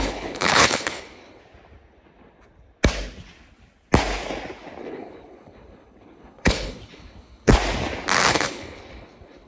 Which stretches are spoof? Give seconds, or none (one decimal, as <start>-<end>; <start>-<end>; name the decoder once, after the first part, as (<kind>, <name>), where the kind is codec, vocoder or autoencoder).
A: 0.0-1.4 (codec, HILCodec); 4.8-7.5; 8.3-9.5